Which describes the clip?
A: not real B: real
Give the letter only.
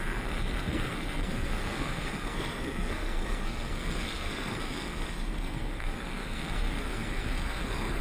A